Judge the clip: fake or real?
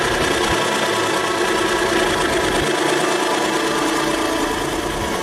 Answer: real